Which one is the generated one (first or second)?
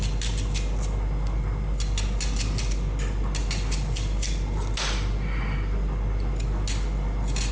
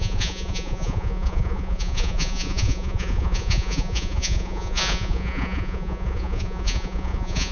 second